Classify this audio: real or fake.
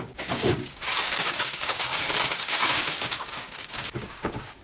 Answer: fake